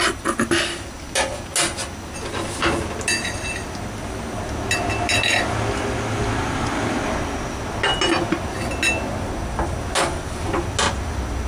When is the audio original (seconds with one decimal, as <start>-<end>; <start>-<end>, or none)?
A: 0.0-11.5